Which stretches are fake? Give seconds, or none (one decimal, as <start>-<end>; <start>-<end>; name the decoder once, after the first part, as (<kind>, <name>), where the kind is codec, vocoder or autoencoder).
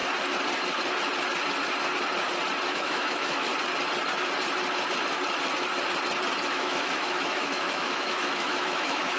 2.7-3.5 (autoencoder, DAC-VAE); 6.5-9.2